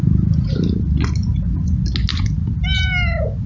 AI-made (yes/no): no